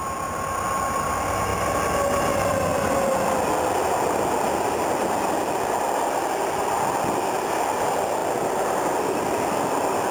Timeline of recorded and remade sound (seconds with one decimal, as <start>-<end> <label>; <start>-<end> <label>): 0.0-10.1 recorded